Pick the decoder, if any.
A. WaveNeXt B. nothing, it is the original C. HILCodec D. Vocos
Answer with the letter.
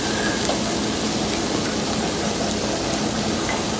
B